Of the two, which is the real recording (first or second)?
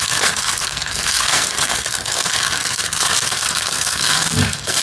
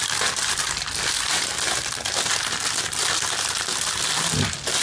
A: second